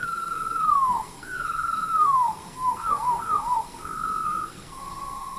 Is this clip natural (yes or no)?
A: no